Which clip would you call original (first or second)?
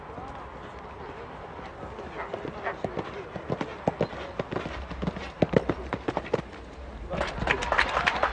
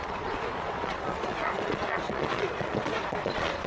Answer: first